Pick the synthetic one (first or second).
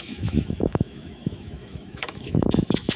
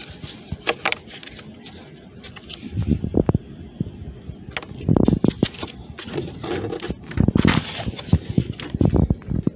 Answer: first